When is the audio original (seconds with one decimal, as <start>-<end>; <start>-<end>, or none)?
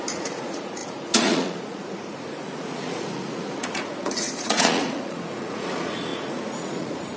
none